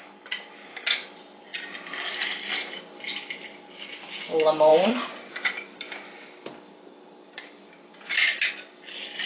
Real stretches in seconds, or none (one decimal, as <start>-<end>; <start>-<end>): 0.0-4.7; 8.5-9.3